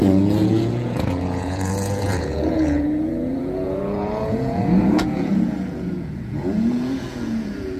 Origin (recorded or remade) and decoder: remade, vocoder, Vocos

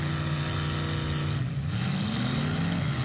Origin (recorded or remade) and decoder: recorded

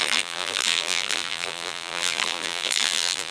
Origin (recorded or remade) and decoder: remade, vocoder, BigVGAN v2